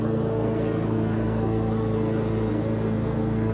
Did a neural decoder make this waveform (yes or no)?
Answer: yes